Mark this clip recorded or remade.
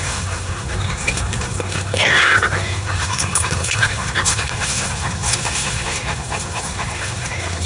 remade